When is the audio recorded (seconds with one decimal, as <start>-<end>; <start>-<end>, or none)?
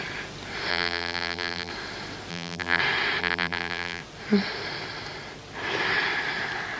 0.0-0.7; 1.7-2.3; 2.8-3.2; 4.0-6.8